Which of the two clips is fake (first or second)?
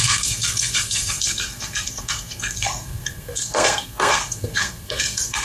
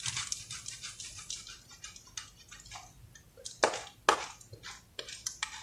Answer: first